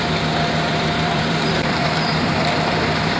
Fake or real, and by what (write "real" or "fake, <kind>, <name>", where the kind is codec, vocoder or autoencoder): fake, vocoder, BigVGAN v2